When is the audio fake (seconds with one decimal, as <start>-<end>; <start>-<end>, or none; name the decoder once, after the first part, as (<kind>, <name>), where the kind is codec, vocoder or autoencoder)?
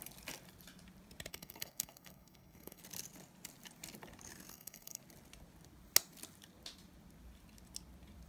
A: 1.3-2.8 (codec, SNAC); 4.5-5.0